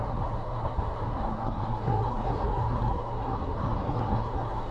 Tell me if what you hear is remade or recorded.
remade